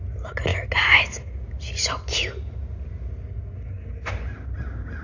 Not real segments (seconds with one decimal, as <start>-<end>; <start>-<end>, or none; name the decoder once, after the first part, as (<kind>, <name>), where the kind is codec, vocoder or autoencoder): none